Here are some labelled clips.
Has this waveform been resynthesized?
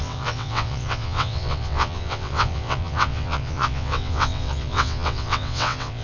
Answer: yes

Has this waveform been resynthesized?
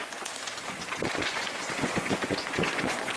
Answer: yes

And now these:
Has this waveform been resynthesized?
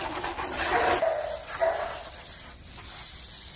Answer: no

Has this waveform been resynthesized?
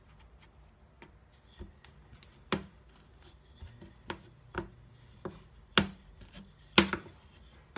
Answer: no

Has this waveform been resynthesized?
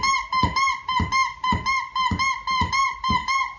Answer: no